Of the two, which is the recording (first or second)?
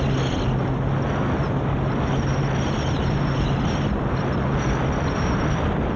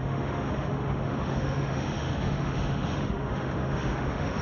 first